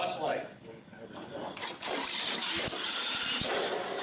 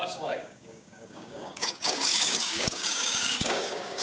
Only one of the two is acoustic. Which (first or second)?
first